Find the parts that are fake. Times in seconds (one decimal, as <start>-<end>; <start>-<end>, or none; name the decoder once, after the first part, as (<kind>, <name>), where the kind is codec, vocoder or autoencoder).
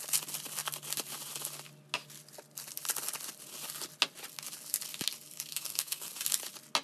5.5-6.1 (codec, SNAC)